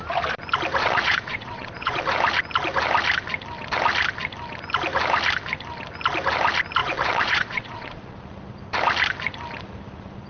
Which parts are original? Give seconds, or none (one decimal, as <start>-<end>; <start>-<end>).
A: 0.0-0.8; 2.1-6.8; 8.2-10.3